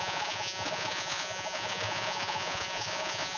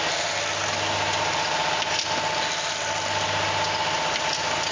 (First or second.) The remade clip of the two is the first